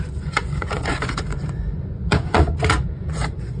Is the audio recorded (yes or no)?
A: no